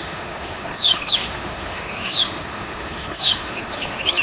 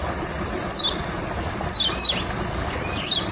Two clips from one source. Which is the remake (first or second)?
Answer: first